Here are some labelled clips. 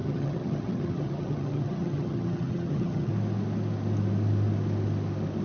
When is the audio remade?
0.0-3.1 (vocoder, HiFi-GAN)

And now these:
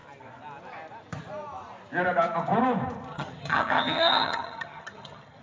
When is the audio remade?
3.1-5.4 (vocoder, HiFi-GAN)

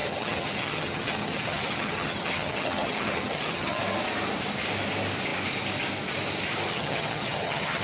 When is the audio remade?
0.0-3.8 (vocoder, HiFi-GAN); 6.7-7.8